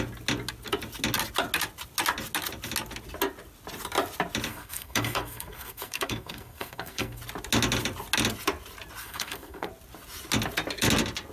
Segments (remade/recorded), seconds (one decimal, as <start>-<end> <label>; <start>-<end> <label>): 0.0-4.5 recorded; 4.5-7.2 remade; 7.2-9.0 recorded; 9.0-9.7 remade; 9.7-11.3 recorded